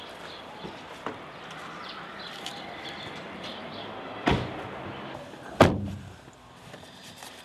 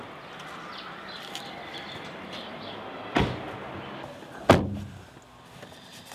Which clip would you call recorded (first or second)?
second